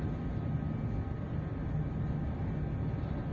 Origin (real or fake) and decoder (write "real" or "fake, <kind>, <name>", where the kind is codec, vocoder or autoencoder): real